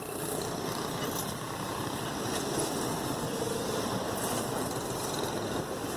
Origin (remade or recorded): remade